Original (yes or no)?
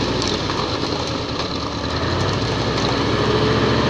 yes